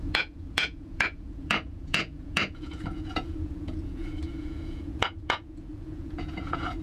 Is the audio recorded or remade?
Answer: remade